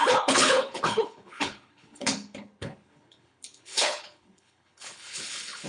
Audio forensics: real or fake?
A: fake